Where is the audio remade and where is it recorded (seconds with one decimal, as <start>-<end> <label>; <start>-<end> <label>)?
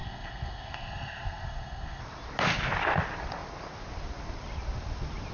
0.0-2.0 remade; 2.0-5.3 recorded